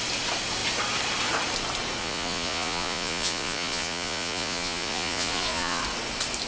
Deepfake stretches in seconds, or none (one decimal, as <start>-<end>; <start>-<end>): 2.0-5.8